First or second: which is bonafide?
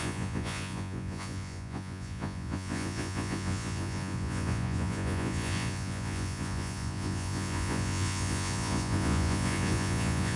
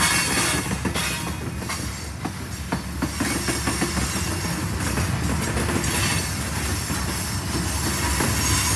second